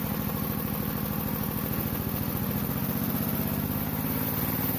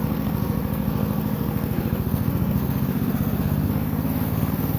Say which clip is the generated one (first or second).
second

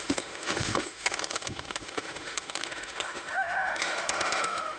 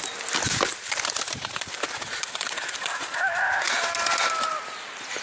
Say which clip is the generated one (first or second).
first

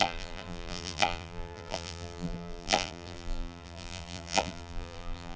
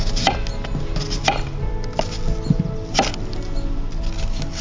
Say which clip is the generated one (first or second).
first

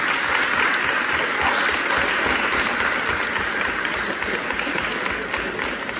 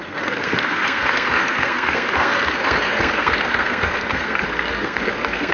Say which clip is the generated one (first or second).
second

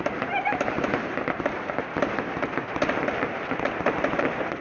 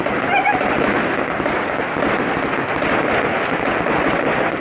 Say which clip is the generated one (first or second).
first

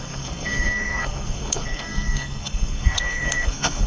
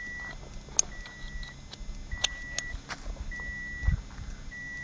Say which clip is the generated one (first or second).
first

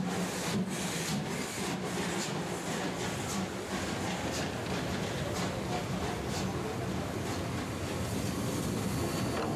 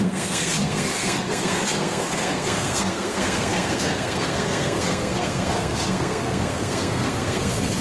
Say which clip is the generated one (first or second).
second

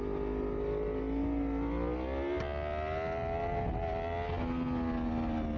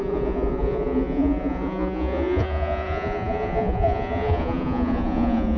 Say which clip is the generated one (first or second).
second